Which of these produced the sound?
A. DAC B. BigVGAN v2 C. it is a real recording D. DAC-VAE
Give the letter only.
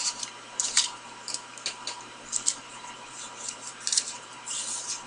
B